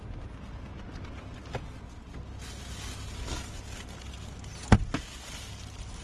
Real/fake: real